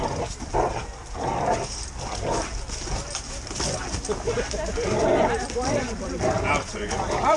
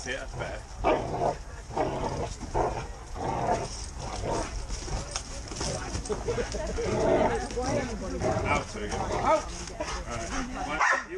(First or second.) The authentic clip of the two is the second